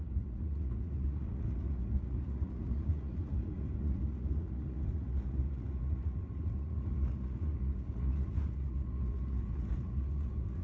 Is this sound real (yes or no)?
no